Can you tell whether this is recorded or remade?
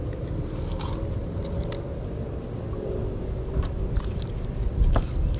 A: remade